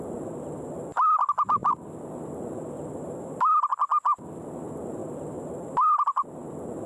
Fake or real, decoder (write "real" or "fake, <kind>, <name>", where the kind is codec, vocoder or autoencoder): real